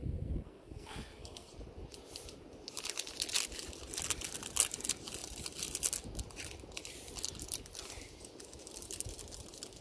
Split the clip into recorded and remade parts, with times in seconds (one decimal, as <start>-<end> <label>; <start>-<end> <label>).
0.0-1.5 remade; 1.5-9.8 recorded